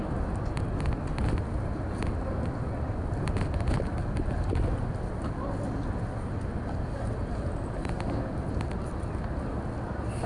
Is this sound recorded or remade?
recorded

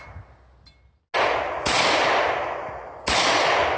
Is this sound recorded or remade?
recorded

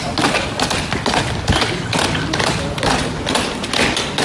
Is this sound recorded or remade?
recorded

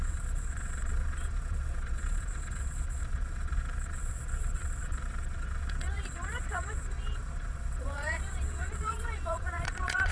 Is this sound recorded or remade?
remade